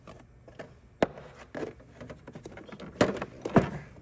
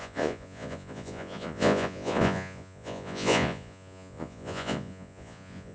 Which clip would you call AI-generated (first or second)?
second